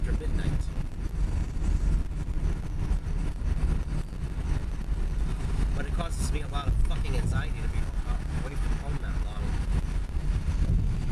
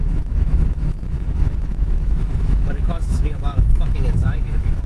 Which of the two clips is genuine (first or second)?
first